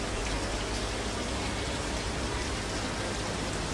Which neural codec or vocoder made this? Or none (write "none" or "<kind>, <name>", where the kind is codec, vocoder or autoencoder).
none